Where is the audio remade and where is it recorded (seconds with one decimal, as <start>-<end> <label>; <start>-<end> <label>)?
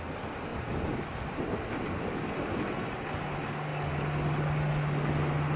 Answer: 0.0-5.6 recorded